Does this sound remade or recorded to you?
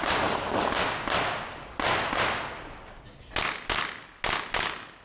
recorded